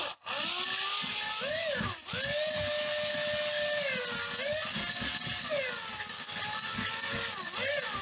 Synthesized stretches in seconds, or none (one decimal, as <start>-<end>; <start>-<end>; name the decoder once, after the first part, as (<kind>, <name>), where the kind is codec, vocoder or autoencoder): none